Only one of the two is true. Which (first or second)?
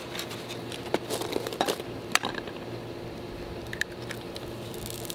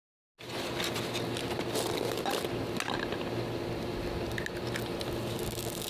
second